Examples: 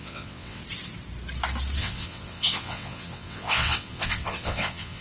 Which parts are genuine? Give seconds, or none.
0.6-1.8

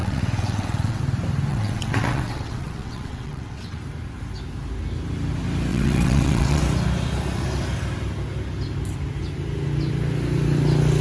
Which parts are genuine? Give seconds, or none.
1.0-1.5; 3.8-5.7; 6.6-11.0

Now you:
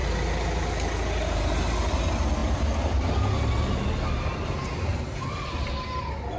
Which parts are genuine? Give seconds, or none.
0.0-6.4

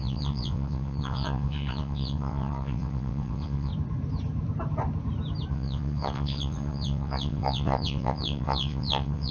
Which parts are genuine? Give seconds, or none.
3.7-5.5